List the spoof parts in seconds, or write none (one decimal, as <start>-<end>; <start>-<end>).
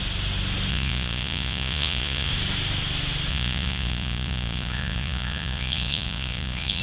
0.7-2.3; 3.3-6.8